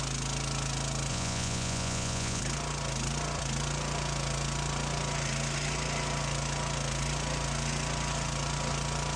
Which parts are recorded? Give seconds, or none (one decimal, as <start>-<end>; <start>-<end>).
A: 0.0-1.1; 2.4-9.2